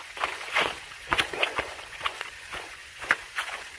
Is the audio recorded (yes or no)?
no